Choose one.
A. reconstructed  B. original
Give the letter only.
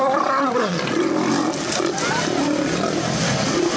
B